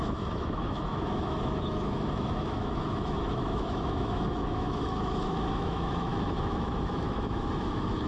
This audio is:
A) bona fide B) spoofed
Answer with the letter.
B